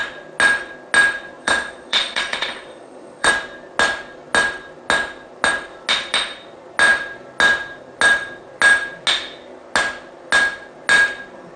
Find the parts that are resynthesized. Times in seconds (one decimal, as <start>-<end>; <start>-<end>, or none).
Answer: 1.4-3.3